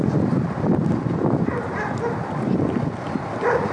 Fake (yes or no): no